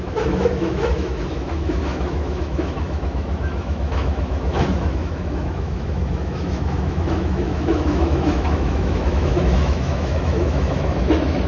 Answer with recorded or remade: remade